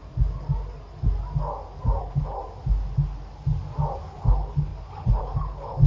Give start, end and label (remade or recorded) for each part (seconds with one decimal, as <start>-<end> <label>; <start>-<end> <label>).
0.0-2.0 recorded; 2.0-2.4 remade; 2.4-4.0 recorded; 4.0-5.9 remade